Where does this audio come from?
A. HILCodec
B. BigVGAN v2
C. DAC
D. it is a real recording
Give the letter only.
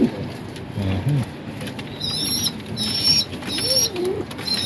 D